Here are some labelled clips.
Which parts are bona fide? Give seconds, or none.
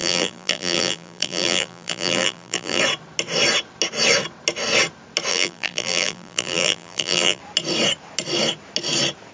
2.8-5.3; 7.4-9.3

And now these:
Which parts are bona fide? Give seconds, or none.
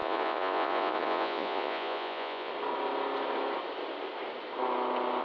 2.5-5.2